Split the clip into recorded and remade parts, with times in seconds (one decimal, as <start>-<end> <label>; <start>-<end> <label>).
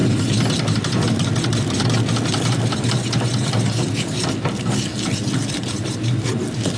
0.0-6.8 recorded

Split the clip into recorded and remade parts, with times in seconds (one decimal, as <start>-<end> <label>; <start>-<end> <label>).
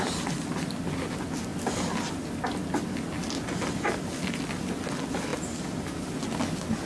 0.0-6.9 recorded